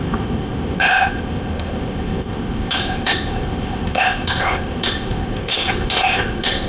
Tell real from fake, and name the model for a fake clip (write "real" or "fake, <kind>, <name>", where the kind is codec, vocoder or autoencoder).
fake, codec, ZipCodec